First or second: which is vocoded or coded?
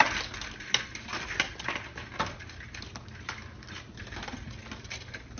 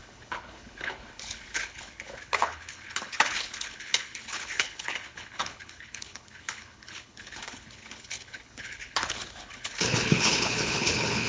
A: second